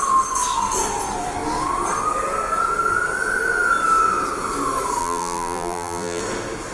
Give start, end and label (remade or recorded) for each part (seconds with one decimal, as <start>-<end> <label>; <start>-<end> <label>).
0.0-5.0 recorded; 5.0-6.2 remade; 6.2-6.7 recorded